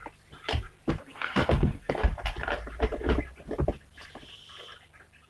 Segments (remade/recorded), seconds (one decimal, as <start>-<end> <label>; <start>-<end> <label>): 0.0-1.0 recorded; 1.0-2.0 remade; 2.0-5.3 recorded